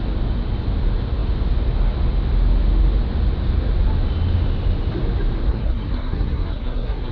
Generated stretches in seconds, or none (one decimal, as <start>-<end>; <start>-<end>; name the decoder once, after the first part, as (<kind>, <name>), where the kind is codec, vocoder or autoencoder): 5.5-7.1 (codec, SNAC)